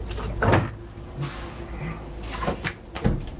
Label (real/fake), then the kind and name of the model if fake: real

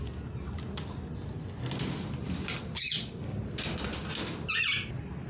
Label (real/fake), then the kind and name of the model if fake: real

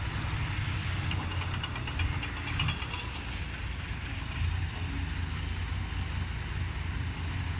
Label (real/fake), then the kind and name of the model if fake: real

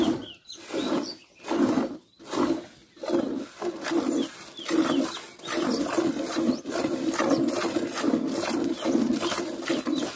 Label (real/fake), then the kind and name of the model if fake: real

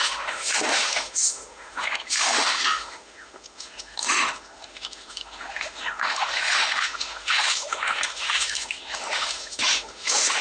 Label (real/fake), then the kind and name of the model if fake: fake, autoencoder, DAC-VAE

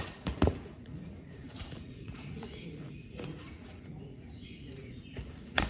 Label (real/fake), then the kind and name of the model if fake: fake, vocoder, Vocos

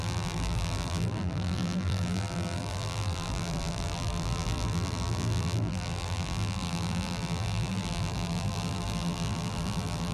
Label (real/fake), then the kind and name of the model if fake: fake, vocoder, BigVGAN v2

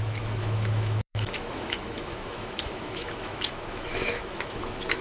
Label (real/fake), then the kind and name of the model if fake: fake, autoencoder, DAC-VAE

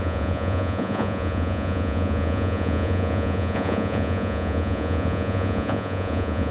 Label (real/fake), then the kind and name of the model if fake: fake, vocoder, Vocos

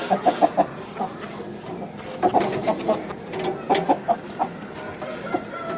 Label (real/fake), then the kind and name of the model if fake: real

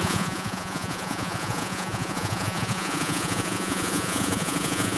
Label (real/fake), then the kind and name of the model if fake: fake, vocoder, Vocos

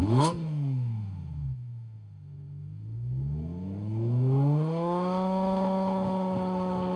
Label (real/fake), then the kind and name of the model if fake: fake, autoencoder, DAC-VAE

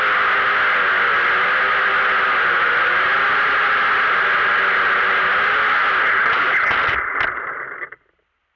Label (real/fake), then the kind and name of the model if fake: fake, vocoder, BigVGAN v2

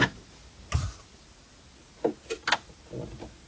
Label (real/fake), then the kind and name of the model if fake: real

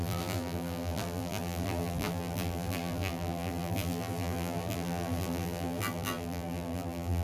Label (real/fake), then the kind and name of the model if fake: fake, vocoder, BigVGAN v2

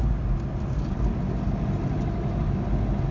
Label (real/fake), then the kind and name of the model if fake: real